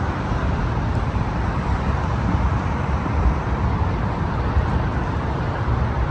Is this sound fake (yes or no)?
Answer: yes